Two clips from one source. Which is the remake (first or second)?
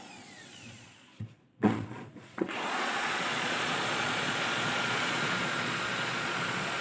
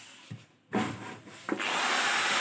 first